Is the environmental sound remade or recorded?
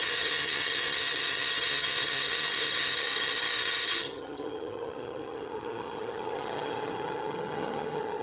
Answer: remade